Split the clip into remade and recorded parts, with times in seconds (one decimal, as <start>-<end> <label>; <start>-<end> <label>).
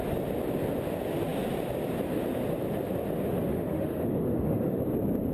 0.0-3.5 recorded; 3.5-4.8 remade; 4.8-5.3 recorded